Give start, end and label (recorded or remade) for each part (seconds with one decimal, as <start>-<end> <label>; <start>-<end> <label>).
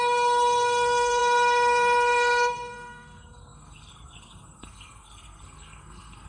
0.0-6.3 remade